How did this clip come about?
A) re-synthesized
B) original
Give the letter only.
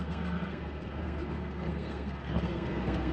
A